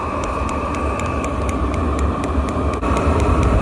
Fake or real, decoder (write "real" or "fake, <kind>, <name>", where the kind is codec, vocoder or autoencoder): fake, vocoder, BigVGAN v2